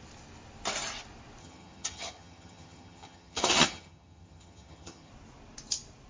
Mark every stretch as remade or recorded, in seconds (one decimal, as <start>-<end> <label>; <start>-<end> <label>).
0.0-1.4 recorded; 1.4-5.1 remade; 5.1-6.1 recorded